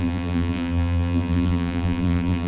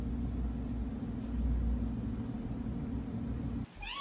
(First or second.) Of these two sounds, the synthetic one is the first